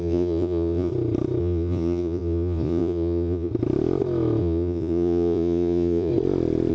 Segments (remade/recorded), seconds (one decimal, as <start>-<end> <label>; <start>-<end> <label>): 0.0-0.9 remade; 0.9-1.4 recorded; 1.4-3.5 remade; 3.5-4.4 recorded; 4.4-6.1 remade; 6.1-6.7 recorded